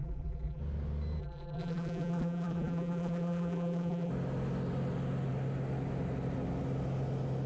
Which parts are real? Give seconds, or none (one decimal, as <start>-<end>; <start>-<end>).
0.6-1.2; 4.1-7.5